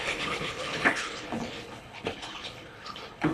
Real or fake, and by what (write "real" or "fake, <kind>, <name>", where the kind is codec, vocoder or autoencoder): fake, codec, HILCodec